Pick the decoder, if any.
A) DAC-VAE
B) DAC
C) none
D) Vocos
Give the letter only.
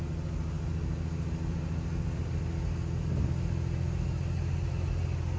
C